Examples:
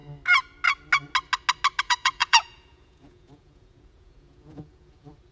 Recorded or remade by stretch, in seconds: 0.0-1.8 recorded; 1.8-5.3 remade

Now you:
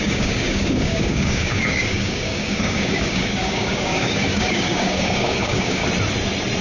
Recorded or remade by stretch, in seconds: 0.0-5.8 remade; 5.8-6.6 recorded

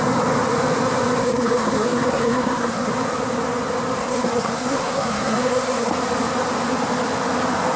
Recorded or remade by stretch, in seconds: 0.0-1.2 recorded; 1.2-2.9 remade; 2.9-4.0 recorded; 4.0-5.9 remade; 5.9-7.8 recorded